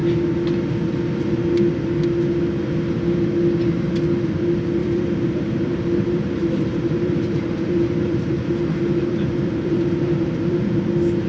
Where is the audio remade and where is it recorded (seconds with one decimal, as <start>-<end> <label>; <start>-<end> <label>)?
0.0-4.8 recorded; 4.8-8.5 remade; 8.5-9.1 recorded; 9.1-10.9 remade; 10.9-11.3 recorded